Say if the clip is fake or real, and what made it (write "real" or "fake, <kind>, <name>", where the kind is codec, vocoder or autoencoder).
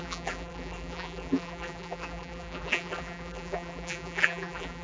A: fake, vocoder, BigVGAN v2